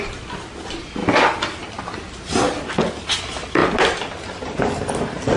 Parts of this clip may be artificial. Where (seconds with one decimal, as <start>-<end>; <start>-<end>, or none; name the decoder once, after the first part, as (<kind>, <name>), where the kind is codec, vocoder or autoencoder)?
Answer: none